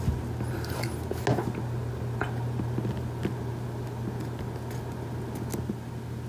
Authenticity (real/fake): real